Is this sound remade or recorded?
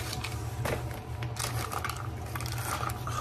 recorded